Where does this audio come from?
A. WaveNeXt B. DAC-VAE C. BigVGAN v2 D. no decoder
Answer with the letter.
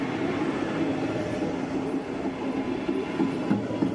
D